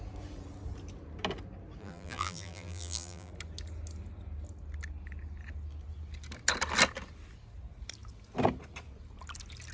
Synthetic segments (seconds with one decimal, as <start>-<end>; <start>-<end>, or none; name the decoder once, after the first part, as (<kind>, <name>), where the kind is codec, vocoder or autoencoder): 1.8-3.3 (vocoder, BigVGAN v2)